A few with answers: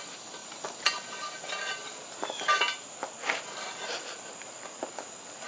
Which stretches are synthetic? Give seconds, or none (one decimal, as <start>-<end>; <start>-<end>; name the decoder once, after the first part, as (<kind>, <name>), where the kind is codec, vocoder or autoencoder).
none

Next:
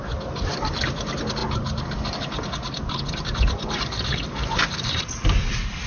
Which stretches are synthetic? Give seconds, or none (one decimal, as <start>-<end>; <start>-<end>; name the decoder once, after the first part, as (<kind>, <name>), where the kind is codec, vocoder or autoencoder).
none

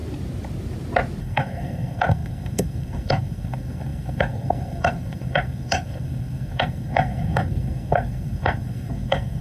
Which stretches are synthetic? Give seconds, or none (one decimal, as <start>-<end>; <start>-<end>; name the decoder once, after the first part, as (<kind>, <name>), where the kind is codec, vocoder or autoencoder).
1.2-9.4 (codec, SNAC)